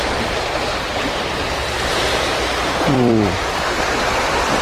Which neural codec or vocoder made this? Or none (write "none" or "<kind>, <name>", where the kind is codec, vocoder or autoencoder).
vocoder, BigVGAN v2